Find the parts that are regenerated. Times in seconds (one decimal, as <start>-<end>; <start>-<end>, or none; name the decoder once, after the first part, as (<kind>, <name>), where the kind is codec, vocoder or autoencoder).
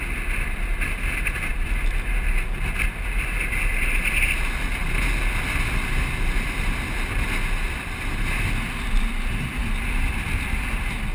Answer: none